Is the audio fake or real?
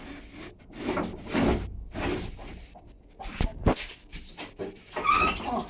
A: real